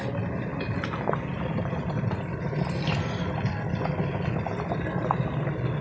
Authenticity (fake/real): real